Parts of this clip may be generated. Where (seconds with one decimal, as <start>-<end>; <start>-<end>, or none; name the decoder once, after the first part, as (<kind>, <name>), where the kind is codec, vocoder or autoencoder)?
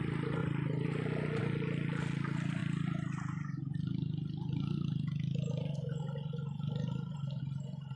none